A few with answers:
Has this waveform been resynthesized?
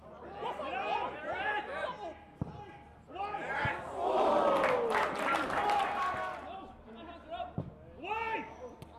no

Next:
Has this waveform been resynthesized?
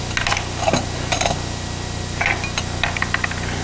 no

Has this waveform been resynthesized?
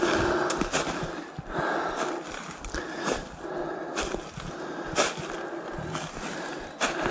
no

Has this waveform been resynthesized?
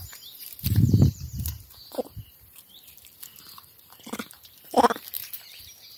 yes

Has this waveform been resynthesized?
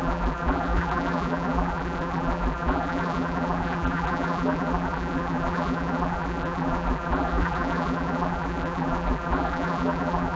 yes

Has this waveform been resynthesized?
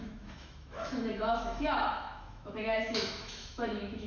yes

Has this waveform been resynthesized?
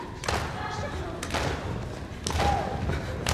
no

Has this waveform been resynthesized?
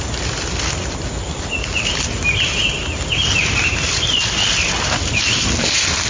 no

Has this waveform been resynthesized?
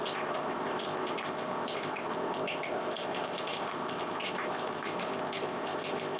yes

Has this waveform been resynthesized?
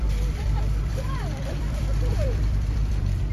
yes